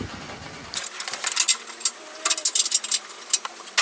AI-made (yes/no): no